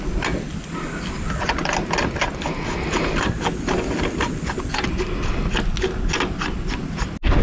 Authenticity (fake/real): real